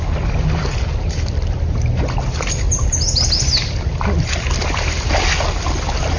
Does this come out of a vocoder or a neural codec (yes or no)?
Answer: no